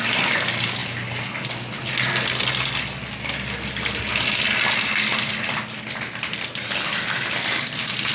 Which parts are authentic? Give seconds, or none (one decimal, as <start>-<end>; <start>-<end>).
0.0-8.1